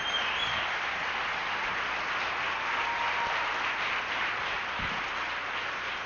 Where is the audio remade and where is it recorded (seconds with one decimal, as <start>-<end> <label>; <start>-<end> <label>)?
0.0-6.1 recorded